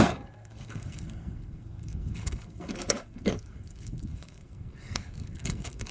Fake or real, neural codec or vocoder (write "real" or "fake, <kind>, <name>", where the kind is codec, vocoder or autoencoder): fake, codec, SNAC